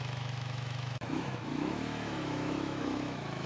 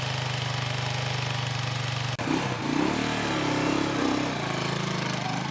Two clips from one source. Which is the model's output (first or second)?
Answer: first